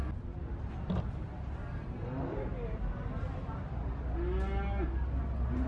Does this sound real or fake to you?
real